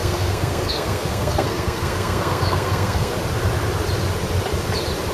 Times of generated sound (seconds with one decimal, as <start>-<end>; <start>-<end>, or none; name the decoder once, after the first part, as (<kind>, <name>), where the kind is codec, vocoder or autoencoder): 0.0-3.1 (codec, SNAC)